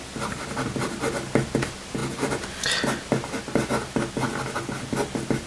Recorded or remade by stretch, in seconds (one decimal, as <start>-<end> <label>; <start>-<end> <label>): 0.0-5.5 recorded